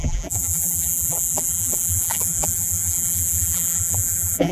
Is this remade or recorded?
remade